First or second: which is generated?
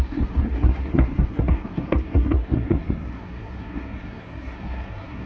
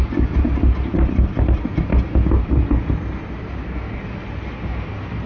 first